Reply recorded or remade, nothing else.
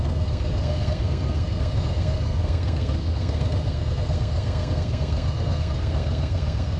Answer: remade